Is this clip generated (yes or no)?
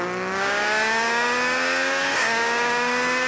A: yes